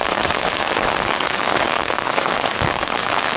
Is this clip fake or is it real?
fake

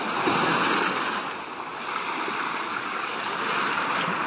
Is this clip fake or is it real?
real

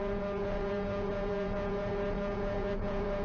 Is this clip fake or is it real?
fake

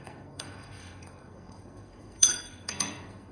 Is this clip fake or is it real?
fake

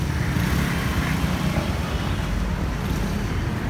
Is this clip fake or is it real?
real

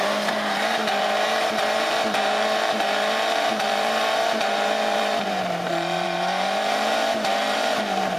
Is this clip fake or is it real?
fake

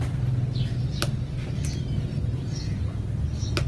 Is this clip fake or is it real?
real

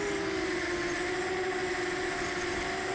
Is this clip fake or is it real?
real